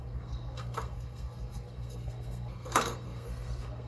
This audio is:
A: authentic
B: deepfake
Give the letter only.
B